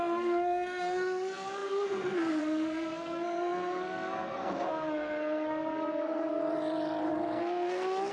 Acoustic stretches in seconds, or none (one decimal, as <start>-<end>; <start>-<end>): 6.4-7.1